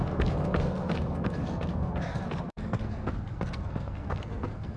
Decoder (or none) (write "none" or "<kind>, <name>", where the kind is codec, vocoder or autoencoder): codec, SNAC